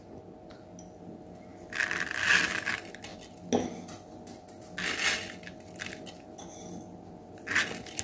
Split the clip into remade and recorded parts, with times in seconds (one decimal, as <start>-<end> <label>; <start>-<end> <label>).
0.0-8.0 recorded